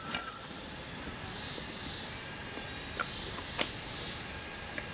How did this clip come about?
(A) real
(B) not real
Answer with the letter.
A